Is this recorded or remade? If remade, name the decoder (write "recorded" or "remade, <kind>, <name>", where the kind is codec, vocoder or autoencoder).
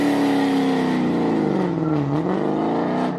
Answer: recorded